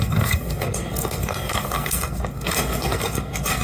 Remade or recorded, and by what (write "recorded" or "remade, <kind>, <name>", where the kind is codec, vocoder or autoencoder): remade, codec, SNAC